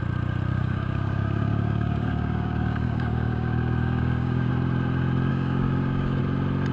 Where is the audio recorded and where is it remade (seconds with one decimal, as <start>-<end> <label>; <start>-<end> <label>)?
0.0-0.5 recorded; 0.5-4.5 remade; 4.5-5.3 recorded; 5.3-6.2 remade; 6.2-6.7 recorded